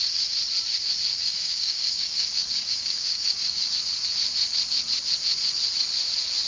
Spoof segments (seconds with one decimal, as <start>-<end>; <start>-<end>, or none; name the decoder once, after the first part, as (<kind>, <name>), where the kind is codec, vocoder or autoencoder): 1.1-3.7 (codec, DAC)